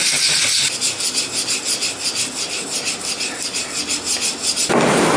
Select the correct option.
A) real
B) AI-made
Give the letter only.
A